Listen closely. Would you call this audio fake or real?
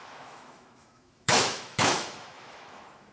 fake